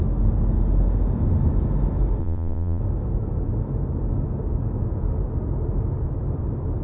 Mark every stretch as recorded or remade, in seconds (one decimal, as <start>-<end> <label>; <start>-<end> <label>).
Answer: 0.0-2.2 recorded; 2.2-2.8 remade; 2.8-6.8 recorded